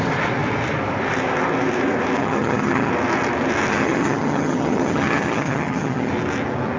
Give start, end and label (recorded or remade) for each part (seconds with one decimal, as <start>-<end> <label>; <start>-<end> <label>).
0.0-2.2 recorded; 2.2-2.9 remade; 2.9-3.7 recorded; 3.7-6.1 remade; 6.1-6.8 recorded